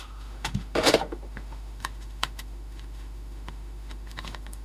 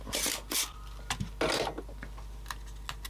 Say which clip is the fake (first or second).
first